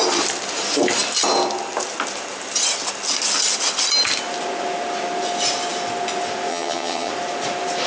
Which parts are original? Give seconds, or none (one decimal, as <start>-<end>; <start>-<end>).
0.0-6.5; 7.1-7.9